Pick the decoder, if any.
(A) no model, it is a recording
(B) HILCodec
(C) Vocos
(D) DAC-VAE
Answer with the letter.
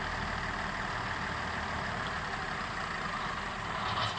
A